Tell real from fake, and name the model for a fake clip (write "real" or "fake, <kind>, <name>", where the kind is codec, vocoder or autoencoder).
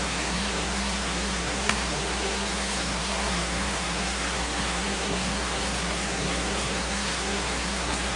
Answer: fake, codec, SNAC